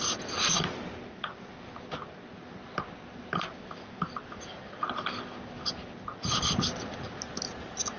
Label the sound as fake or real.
real